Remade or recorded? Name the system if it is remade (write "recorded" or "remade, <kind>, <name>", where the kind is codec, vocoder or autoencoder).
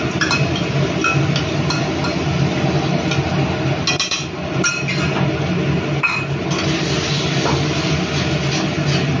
recorded